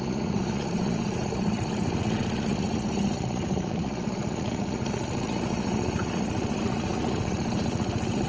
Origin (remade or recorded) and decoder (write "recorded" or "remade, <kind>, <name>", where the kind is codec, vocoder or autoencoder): remade, vocoder, Vocos